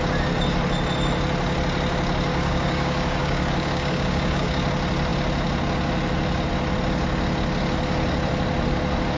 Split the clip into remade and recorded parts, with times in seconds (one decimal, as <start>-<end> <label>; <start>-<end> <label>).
0.0-2.3 recorded; 2.3-4.5 remade; 4.5-9.2 recorded